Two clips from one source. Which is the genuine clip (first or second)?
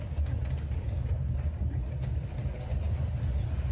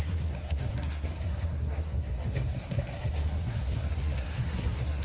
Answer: first